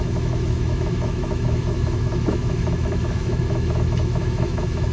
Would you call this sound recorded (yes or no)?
no